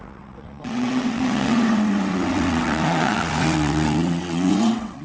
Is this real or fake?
fake